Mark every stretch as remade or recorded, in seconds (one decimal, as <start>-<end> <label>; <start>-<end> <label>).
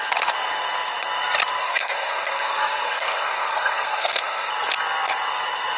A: 0.0-1.6 recorded; 1.6-4.5 remade; 4.5-5.8 recorded